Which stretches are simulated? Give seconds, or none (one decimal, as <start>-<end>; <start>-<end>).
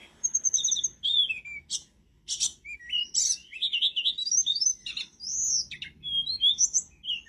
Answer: 0.0-0.7